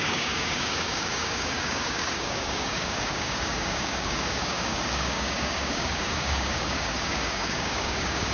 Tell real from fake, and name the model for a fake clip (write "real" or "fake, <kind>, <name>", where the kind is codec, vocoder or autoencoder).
fake, codec, DAC